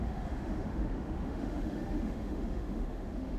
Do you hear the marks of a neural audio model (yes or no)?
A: yes